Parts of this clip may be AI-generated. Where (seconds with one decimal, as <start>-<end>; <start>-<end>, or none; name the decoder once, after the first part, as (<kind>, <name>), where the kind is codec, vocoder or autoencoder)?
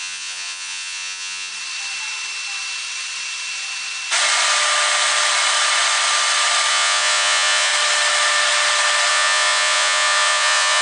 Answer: 0.0-1.5 (vocoder, Vocos); 6.7-7.7; 9.1-10.8